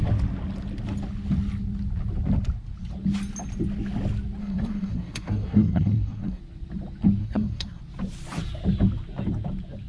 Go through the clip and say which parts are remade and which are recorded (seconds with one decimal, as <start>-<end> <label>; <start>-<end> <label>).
0.0-4.4 recorded; 4.4-6.4 remade; 6.4-7.2 recorded; 7.2-7.8 remade; 7.8-9.9 recorded